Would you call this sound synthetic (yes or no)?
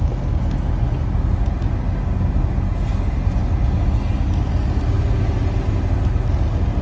no